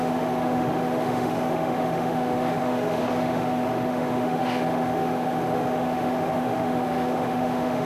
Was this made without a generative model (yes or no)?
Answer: no